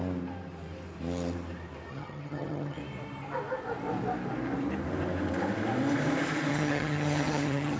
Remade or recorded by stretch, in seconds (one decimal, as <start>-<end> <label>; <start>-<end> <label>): 0.0-1.9 recorded; 1.9-2.8 remade; 2.8-6.5 recorded; 6.5-7.8 remade